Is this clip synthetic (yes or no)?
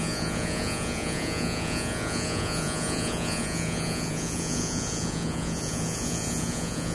yes